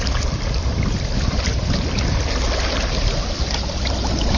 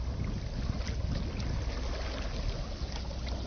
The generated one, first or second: first